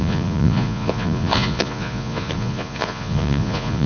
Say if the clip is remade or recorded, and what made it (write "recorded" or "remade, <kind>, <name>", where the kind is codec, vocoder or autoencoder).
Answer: remade, vocoder, Vocos